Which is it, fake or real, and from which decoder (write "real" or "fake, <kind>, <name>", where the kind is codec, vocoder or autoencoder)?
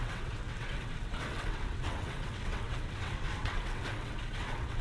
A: fake, vocoder, WaveNeXt